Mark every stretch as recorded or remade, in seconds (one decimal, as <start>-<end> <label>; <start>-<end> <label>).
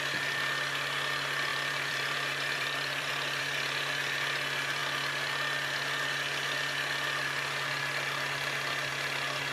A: 0.0-1.5 recorded; 1.5-3.4 remade; 3.4-9.5 recorded